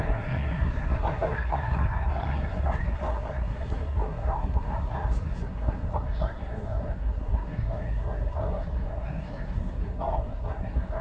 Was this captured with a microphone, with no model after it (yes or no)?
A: no